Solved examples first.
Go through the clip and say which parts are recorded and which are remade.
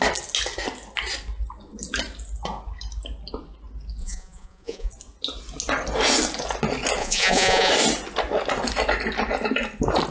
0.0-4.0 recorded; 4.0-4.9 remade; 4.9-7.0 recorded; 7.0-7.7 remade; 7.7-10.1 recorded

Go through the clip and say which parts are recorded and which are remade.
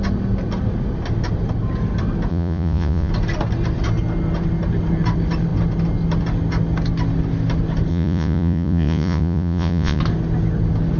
0.0-2.3 recorded; 2.3-3.1 remade; 3.1-7.9 recorded; 7.9-10.0 remade; 10.0-11.0 recorded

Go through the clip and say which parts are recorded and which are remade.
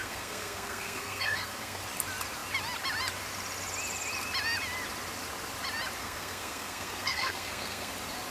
0.0-1.8 remade; 1.8-6.0 recorded; 6.0-7.9 remade; 7.9-8.3 recorded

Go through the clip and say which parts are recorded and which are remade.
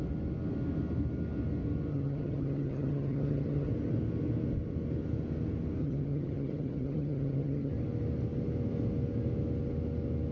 0.0-1.9 recorded; 1.9-3.7 remade; 3.7-5.8 recorded; 5.8-7.7 remade; 7.7-10.3 recorded